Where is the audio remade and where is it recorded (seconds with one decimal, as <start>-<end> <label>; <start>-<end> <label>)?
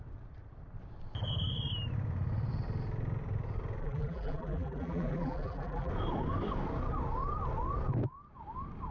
0.0-3.8 recorded; 3.8-5.9 remade; 5.9-8.9 recorded